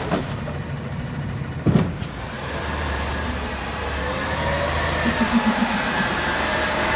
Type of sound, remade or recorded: remade